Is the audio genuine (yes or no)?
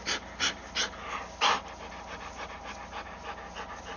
yes